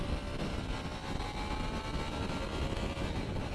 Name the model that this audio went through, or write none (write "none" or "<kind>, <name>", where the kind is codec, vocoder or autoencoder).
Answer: none